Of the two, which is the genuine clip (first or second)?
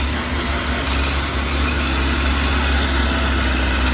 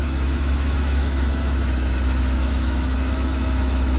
first